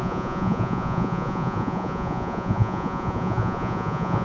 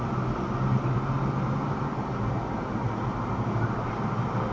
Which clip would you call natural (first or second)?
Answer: second